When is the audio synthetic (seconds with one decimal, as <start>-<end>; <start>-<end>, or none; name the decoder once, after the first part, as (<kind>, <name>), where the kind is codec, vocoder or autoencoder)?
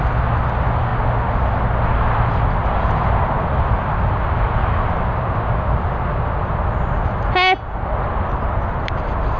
none